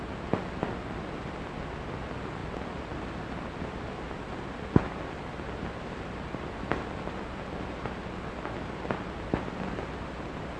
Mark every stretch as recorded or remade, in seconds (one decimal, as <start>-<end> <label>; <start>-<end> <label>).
0.0-10.6 recorded